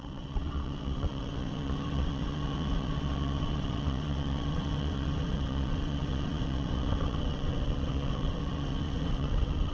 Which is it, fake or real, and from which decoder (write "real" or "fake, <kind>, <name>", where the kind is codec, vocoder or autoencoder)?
fake, vocoder, WaveNeXt